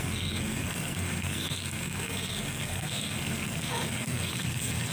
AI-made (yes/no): yes